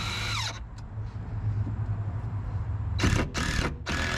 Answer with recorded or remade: recorded